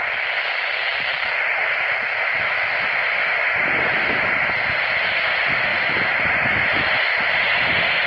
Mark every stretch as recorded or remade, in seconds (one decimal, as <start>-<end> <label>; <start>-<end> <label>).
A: 0.0-8.1 recorded